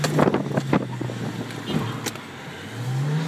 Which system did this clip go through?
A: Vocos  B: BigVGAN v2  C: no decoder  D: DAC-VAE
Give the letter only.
C